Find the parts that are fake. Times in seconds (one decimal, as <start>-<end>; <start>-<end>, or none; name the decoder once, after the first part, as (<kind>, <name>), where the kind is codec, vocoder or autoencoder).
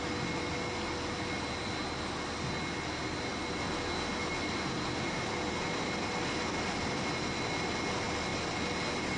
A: 3.3-7.1 (vocoder, BigVGAN v2); 8.3-9.2